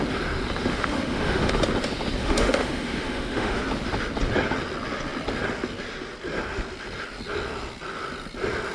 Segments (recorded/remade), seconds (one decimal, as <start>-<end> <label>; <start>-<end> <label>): 0.0-0.7 recorded; 0.7-1.5 remade; 1.5-2.2 recorded; 2.2-3.6 remade; 3.6-8.7 recorded